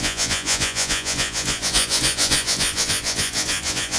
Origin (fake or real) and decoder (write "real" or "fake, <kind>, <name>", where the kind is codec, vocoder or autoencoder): fake, vocoder, Vocos